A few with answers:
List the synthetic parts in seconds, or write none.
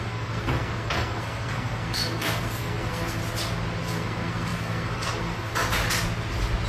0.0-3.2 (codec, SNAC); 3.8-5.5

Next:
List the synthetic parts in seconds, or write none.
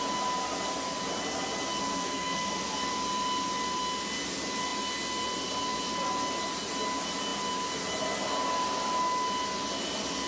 1.8-2.5 (codec, SNAC)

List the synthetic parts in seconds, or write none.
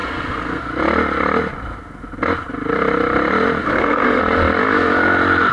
0.0-0.6 (codec, SNAC); 3.6-4.2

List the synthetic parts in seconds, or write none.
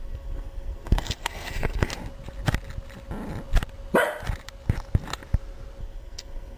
0.0-1.9 (codec, SNAC); 5.8-6.6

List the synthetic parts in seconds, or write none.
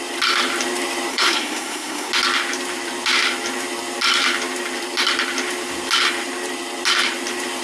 1.1-2.1 (codec, SNAC)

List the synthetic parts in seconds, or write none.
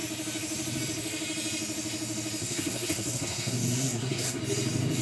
2.4-4.4 (codec, SNAC)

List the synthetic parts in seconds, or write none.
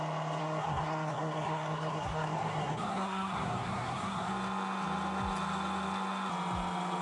0.4-4.3 (codec, SNAC)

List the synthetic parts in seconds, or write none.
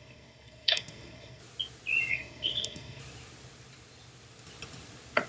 0.0-1.4 (codec, SNAC); 2.1-3.0